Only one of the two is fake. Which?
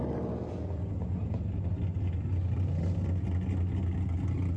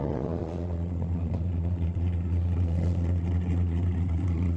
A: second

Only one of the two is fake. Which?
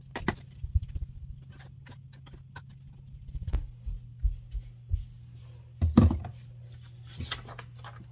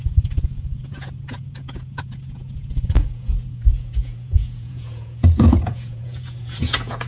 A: second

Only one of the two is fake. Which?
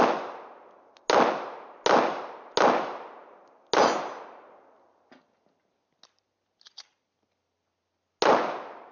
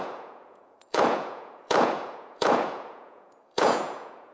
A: second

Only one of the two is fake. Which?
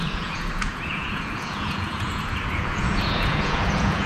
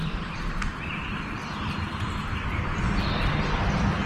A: first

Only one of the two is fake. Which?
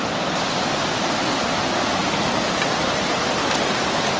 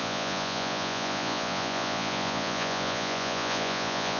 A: second